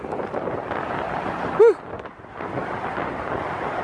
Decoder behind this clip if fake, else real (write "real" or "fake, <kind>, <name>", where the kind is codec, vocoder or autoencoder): real